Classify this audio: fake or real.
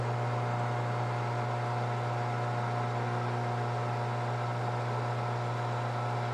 real